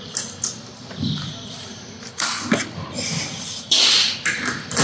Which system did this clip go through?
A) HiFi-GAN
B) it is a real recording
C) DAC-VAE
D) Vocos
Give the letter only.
B